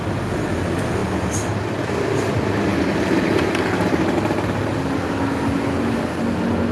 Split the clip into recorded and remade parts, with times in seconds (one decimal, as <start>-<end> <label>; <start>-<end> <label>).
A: 0.0-6.7 recorded